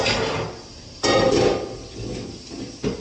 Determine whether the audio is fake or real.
real